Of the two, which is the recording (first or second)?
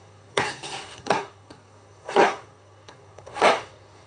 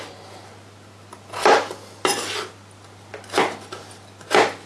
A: second